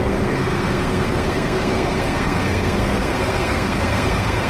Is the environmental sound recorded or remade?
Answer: remade